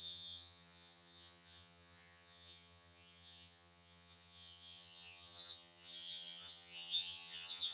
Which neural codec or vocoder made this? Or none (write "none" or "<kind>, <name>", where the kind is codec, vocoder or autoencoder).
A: vocoder, HiFi-GAN